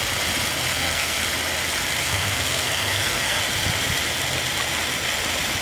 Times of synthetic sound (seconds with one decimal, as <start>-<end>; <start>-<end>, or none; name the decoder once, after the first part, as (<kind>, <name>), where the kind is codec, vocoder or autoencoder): 0.7-1.2 (codec, SNAC); 2.0-3.4